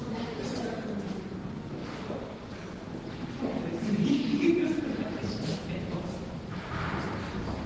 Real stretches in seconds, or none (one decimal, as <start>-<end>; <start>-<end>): 1.8-3.8

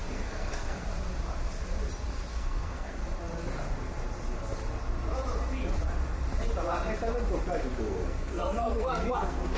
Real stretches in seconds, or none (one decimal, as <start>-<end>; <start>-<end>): 0.8-2.3; 3.0-7.8

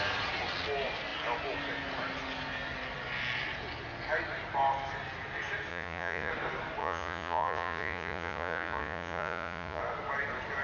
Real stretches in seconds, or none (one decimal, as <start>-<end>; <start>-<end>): 0.0-5.7; 6.3-6.8; 9.8-10.6

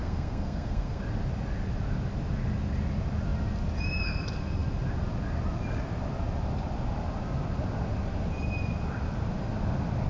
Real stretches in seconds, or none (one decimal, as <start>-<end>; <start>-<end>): 1.0-10.1

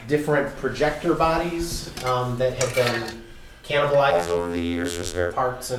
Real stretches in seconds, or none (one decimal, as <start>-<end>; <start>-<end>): 0.0-4.1; 5.3-5.8